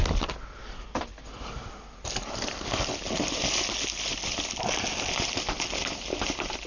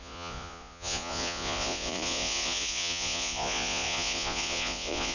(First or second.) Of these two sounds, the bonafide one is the first